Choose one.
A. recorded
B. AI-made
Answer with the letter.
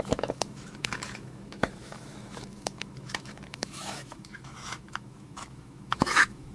B